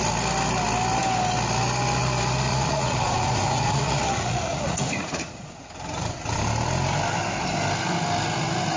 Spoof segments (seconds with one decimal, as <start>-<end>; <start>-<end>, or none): 2.5-5.5